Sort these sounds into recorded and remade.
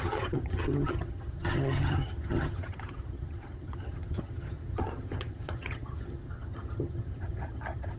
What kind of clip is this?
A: remade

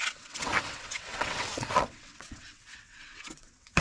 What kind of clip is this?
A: remade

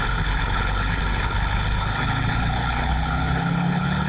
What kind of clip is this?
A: remade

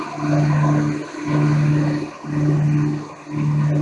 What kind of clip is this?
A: recorded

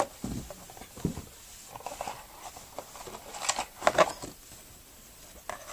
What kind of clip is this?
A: recorded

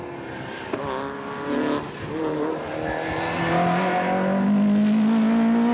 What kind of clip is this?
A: recorded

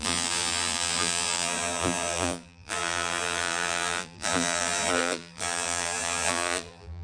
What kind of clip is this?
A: remade